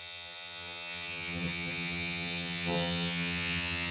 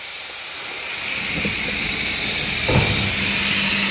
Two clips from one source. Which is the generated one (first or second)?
first